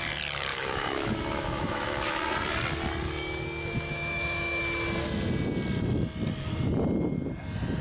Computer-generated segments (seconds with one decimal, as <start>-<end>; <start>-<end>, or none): 0.5-2.2; 3.9-4.6